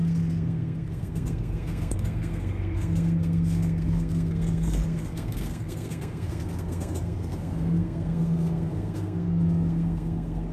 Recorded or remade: remade